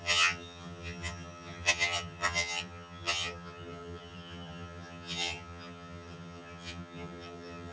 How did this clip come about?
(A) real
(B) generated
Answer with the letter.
B